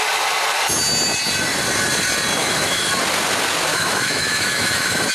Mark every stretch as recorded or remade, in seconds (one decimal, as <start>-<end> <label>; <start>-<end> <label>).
0.0-2.4 recorded; 2.4-2.9 remade; 2.9-3.7 recorded; 3.7-5.1 remade